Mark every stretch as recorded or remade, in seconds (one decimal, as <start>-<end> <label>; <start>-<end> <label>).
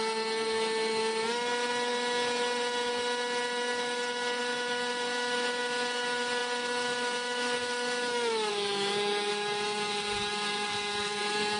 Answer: 0.0-11.6 recorded